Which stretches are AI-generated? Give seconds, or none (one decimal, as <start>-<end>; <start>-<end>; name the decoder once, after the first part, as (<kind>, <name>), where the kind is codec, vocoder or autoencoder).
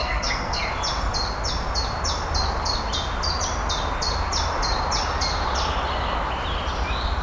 0.0-0.6 (codec, SNAC)